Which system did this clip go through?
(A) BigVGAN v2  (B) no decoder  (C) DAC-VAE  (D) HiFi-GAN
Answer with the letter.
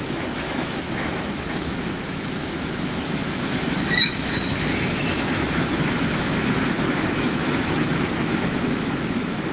C